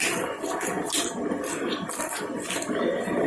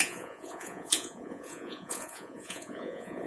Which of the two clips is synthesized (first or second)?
second